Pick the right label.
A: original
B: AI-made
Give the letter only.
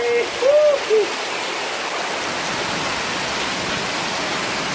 A